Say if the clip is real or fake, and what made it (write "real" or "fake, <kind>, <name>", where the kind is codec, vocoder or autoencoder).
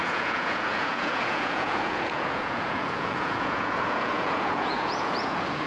fake, vocoder, Vocos